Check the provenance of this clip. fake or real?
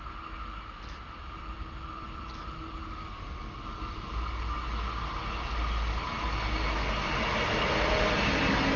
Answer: real